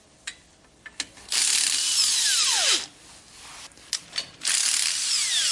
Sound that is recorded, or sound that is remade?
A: recorded